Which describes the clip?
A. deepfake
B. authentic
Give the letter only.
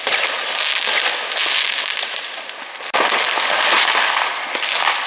B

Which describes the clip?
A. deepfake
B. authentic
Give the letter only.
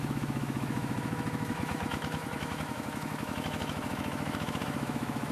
A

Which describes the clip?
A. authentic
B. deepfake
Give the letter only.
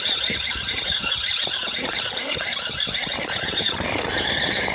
A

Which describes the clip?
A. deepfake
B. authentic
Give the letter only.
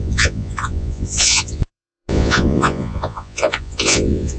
A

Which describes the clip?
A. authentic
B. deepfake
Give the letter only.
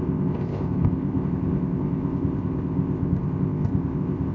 B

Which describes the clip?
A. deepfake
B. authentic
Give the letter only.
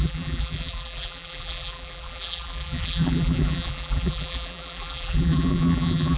A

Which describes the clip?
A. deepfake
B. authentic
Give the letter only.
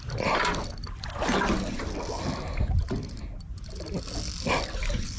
B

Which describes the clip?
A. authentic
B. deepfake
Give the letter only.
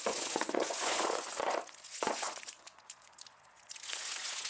B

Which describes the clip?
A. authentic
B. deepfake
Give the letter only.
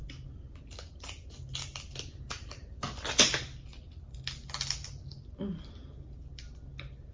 A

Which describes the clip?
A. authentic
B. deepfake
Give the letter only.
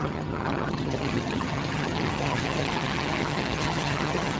B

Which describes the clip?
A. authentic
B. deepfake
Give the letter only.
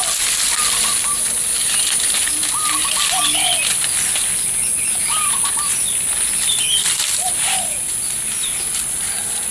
A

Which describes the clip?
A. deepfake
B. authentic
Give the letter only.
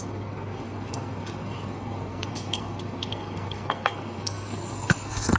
A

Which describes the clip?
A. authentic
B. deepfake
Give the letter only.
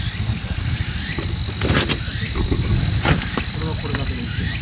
A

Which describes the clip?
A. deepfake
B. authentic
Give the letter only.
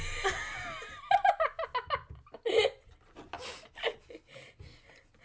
B